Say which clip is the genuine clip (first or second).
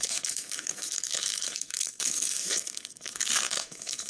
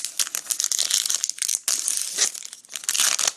second